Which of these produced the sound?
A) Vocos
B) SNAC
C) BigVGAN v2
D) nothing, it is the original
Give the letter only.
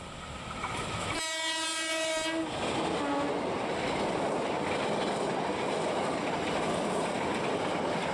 D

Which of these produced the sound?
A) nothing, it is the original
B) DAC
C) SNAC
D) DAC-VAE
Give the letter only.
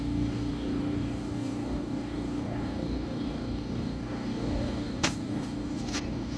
B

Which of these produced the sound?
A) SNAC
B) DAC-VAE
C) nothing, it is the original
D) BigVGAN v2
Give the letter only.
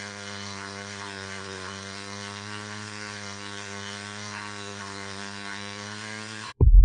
A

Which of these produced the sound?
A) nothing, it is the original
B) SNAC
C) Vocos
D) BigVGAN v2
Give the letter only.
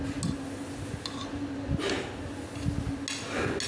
A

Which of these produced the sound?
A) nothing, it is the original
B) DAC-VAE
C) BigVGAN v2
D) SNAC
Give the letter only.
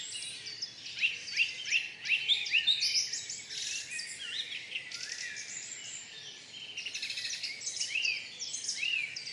A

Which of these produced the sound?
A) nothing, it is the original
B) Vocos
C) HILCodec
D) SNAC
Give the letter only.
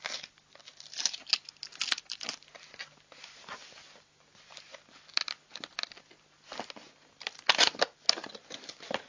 A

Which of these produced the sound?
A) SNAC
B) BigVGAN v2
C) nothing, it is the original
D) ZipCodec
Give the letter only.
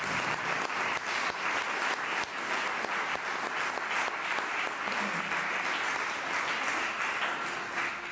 C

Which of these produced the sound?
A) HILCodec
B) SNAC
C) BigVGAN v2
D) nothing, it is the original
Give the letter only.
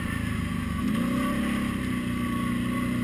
D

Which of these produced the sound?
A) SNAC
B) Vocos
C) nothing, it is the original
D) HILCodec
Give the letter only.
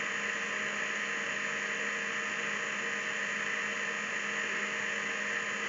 C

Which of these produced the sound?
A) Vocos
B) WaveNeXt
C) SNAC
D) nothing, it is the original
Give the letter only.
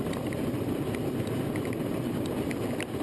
D